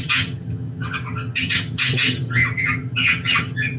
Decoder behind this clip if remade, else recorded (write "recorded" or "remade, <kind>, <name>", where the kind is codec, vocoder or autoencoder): remade, vocoder, HiFi-GAN